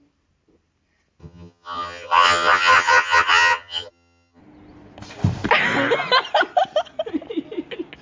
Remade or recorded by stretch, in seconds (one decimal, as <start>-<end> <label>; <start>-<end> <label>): 0.0-1.2 recorded; 1.2-4.4 remade; 4.4-8.0 recorded